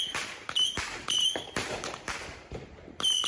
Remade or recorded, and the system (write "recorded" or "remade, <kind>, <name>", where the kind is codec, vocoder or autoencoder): remade, vocoder, BigVGAN v2